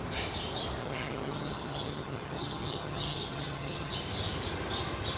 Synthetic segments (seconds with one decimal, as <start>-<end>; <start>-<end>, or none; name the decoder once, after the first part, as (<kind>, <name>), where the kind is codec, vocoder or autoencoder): 0.8-3.9 (vocoder, HiFi-GAN)